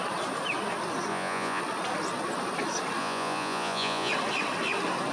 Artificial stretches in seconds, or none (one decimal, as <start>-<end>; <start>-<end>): 1.1-1.6; 3.0-4.1